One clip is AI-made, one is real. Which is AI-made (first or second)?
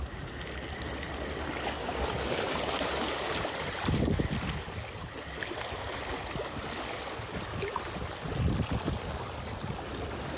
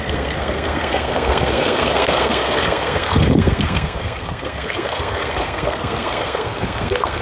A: second